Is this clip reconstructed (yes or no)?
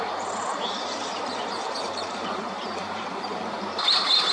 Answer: yes